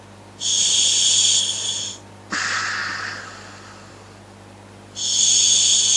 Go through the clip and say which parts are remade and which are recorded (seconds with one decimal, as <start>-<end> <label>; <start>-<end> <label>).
0.0-0.5 recorded; 0.5-1.1 remade; 1.1-6.0 recorded